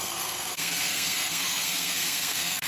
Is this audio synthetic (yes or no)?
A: yes